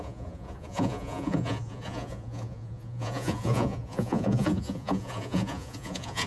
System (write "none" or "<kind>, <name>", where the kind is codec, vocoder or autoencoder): vocoder, Vocos